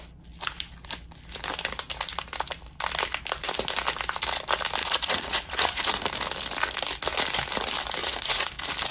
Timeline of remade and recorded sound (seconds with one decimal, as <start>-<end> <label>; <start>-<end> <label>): 0.0-4.8 recorded; 4.8-5.9 remade; 5.9-8.0 recorded; 8.0-8.5 remade; 8.5-8.9 recorded